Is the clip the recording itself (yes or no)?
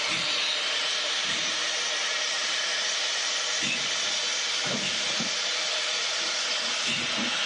yes